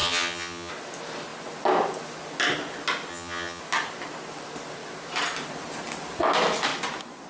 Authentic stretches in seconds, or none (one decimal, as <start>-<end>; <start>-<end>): 0.7-3.1; 3.6-7.3